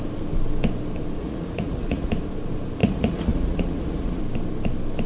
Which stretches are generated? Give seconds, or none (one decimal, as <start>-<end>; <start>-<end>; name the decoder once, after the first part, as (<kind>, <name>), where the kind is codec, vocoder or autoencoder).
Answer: 1.2-2.1 (vocoder, Vocos); 2.8-4.2